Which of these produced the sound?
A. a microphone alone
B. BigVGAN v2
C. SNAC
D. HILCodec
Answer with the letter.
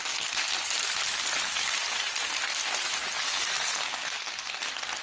A